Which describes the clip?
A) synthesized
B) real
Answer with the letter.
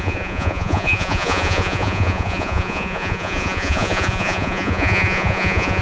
A